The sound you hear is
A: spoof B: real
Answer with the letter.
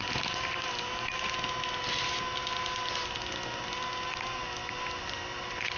B